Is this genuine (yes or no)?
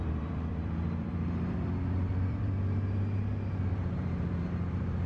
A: no